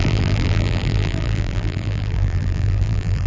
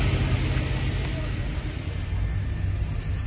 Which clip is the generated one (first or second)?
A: first